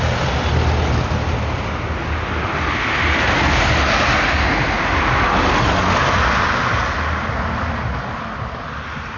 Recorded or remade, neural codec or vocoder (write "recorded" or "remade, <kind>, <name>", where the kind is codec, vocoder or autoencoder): recorded